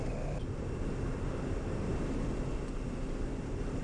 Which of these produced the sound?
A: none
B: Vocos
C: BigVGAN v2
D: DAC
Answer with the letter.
A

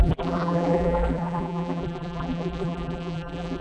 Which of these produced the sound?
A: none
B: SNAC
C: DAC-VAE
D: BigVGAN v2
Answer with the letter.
D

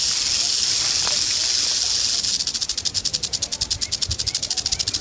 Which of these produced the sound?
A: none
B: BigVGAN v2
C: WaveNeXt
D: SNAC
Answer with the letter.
A